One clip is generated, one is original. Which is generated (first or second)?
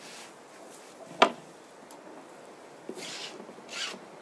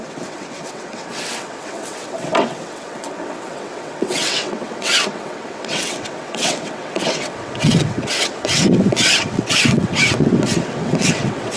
second